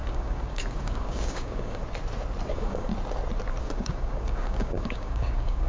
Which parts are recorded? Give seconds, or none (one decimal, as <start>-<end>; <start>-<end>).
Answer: 1.8-2.5; 2.9-3.6